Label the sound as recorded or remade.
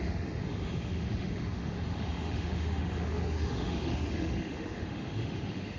remade